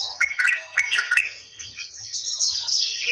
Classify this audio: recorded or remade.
remade